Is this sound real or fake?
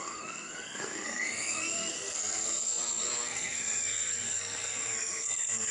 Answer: fake